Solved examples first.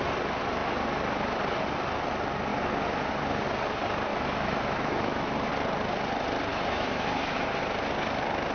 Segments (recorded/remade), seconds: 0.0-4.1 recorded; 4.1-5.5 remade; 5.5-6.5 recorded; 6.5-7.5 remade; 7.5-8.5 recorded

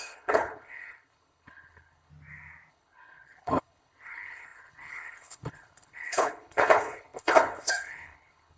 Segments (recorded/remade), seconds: 0.0-2.1 remade; 2.1-2.7 recorded; 2.7-8.6 remade

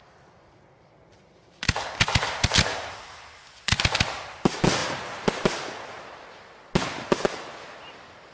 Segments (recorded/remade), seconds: 0.0-8.3 recorded